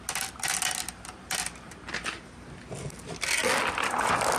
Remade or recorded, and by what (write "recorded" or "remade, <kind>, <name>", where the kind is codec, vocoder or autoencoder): recorded